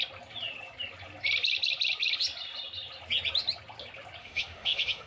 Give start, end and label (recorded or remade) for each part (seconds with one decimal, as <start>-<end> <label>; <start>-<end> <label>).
0.0-4.2 recorded; 4.2-5.1 remade